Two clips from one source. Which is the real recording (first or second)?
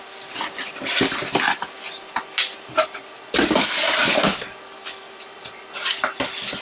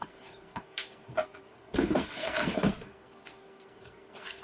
first